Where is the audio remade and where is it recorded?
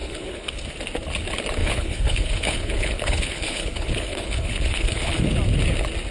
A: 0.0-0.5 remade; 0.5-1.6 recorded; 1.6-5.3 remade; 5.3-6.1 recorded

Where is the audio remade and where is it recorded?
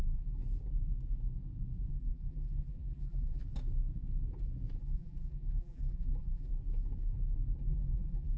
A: 0.0-0.4 remade; 0.4-1.9 recorded; 1.9-3.4 remade; 3.4-4.8 recorded; 4.8-6.5 remade; 6.5-7.6 recorded; 7.6-8.4 remade